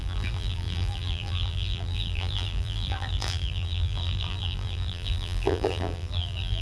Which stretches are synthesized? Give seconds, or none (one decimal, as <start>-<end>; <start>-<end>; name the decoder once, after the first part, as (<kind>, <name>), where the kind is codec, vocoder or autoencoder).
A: 0.0-6.6 (vocoder, BigVGAN v2)